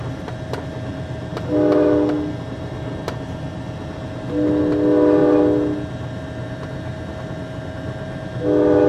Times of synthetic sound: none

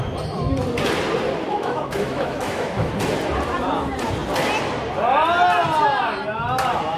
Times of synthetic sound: 1.5-2.9 (autoencoder, DAC-VAE)

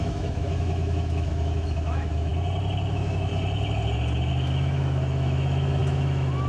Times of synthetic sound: 0.0-2.3 (autoencoder, DAC-VAE); 2.9-3.3; 4.3-6.5

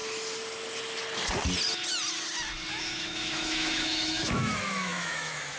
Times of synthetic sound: 2.7-5.6 (autoencoder, DAC-VAE)

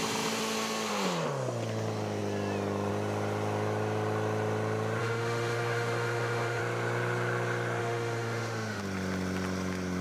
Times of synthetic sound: 5.0-6.6 (autoencoder, DAC-VAE); 7.8-8.8

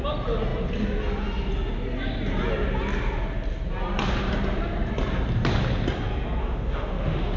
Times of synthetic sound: 6.4-7.4 (autoencoder, DAC-VAE)

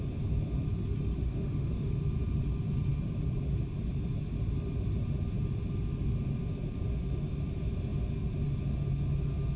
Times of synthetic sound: 1.2-1.9 (autoencoder, DAC-VAE)